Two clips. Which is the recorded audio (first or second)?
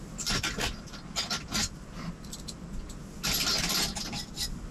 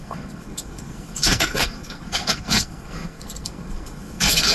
first